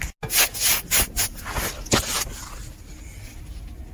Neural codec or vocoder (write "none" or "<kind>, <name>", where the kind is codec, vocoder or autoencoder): none